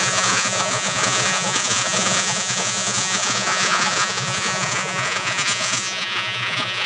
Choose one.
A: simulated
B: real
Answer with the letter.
A